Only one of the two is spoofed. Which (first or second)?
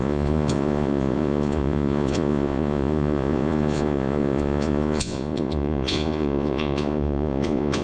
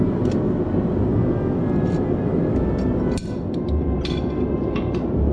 first